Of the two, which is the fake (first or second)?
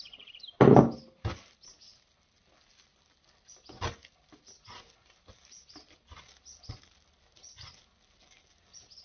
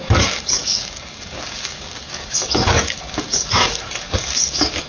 second